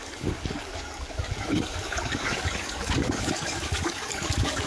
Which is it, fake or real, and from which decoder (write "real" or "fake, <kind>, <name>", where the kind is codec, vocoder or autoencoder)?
fake, codec, DAC